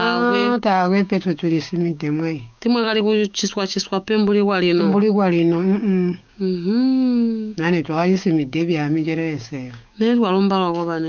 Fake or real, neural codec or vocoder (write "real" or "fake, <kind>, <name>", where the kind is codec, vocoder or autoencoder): fake, codec, DAC